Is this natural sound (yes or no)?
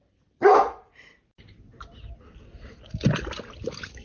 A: yes